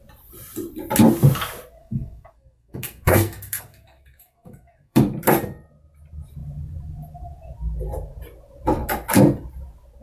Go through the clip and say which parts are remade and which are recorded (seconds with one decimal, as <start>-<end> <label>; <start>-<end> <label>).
0.0-1.8 recorded; 1.8-5.0 remade; 5.0-10.0 recorded